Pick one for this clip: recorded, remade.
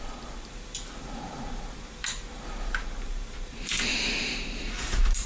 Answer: remade